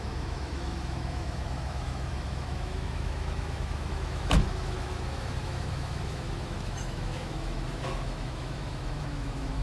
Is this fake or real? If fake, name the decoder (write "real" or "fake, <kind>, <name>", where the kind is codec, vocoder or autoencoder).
fake, autoencoder, DAC-VAE